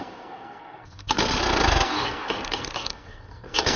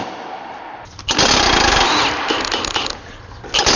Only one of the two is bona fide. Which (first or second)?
second